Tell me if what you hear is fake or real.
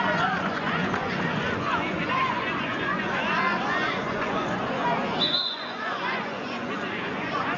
fake